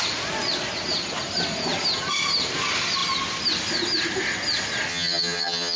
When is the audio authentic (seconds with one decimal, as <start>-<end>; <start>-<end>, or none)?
0.0-4.9